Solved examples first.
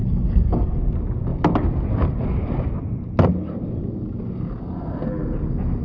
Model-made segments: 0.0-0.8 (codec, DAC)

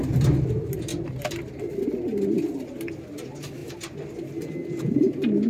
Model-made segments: none

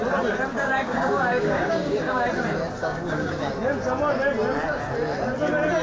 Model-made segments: 0.5-2.3 (codec, DAC); 2.8-3.5

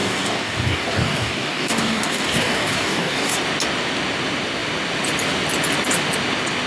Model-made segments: 0.0-3.4 (codec, DAC)

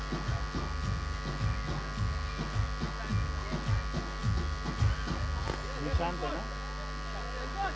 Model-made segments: none

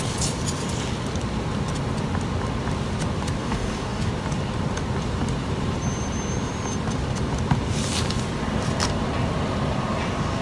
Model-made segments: 3.4-4.1 (codec, DAC)

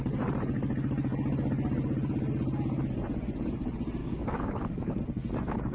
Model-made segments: 4.0-5.0 (codec, DAC)